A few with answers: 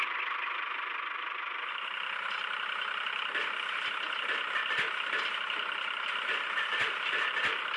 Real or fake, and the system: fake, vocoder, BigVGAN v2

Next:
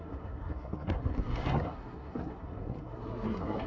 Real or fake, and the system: fake, codec, SNAC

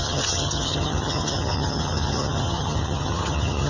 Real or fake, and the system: fake, vocoder, HiFi-GAN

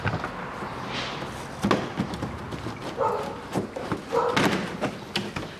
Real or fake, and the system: real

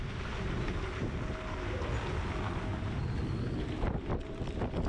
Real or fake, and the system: real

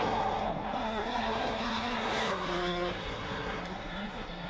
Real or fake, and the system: fake, codec, SNAC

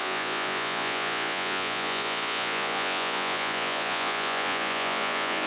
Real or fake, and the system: fake, vocoder, Vocos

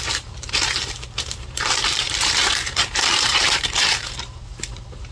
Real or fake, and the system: fake, vocoder, BigVGAN v2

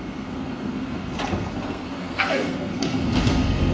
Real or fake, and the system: fake, codec, SNAC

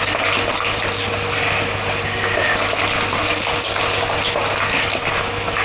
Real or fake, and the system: real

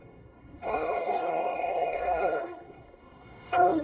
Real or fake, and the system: fake, codec, SNAC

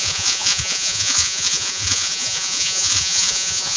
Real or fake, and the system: fake, vocoder, Vocos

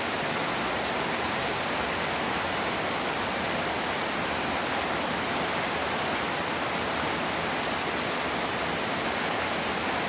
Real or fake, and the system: real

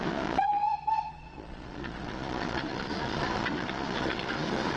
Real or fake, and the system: fake, vocoder, Vocos